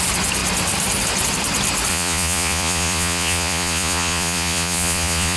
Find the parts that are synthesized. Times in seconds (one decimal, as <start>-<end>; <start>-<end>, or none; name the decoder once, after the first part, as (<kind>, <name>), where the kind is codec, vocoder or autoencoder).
1.9-5.4 (vocoder, Vocos)

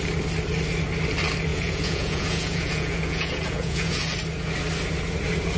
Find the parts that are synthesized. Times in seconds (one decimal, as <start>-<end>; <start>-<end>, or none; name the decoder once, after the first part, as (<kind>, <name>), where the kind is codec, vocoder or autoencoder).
1.5-4.0 (vocoder, Vocos)

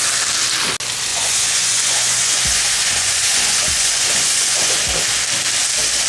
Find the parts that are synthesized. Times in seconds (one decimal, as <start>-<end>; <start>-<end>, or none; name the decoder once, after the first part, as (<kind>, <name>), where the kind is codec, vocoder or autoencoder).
1.1-4.8 (vocoder, Vocos)

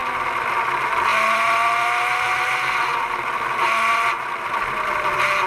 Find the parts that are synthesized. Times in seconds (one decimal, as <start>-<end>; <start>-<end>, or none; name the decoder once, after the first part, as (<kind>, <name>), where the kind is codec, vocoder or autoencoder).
none

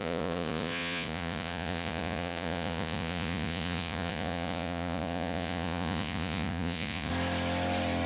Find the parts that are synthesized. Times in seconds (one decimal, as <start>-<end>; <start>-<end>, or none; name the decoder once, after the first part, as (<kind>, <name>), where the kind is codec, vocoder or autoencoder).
0.0-7.1 (vocoder, Vocos)